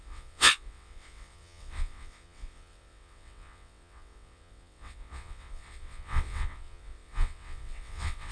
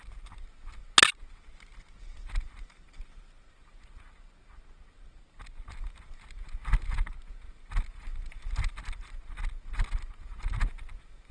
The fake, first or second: first